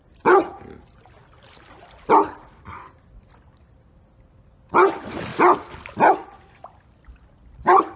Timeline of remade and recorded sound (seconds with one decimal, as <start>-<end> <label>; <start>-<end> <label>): 0.0-8.0 recorded